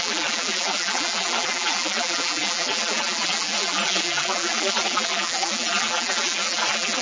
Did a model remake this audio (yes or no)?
yes